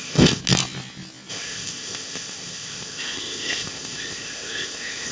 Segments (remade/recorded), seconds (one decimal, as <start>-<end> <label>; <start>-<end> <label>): 0.0-0.4 remade; 0.4-1.3 recorded; 1.3-5.1 remade